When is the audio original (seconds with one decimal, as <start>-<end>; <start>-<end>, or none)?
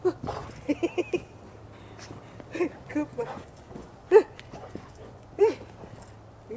0.0-2.9; 5.4-6.6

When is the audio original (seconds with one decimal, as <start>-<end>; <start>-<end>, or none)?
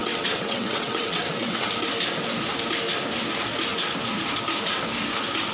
1.7-5.5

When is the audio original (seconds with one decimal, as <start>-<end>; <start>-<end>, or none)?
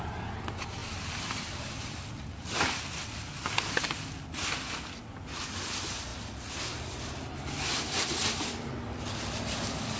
0.0-10.0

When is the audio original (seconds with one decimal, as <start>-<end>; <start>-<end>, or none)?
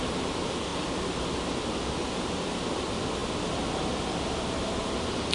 0.0-5.3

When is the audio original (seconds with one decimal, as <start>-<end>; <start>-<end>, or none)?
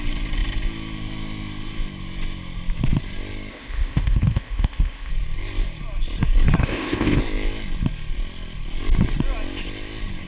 0.0-3.5; 5.1-6.6; 7.2-10.3